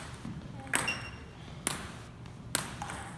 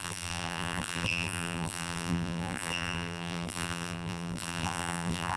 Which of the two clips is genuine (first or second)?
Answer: first